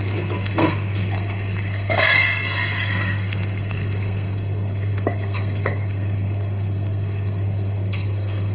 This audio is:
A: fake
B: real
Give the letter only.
A